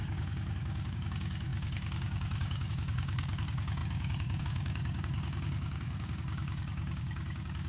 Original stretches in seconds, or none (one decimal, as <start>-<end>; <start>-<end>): none